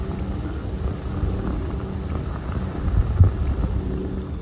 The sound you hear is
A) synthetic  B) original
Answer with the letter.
B